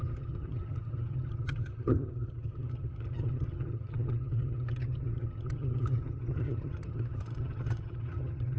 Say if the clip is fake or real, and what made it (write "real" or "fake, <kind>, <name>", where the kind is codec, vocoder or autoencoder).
fake, vocoder, HiFi-GAN